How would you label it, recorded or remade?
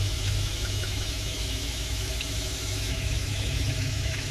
remade